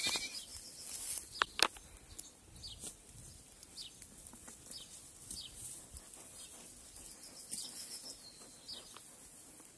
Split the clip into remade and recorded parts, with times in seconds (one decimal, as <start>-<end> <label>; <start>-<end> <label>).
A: 0.0-9.8 recorded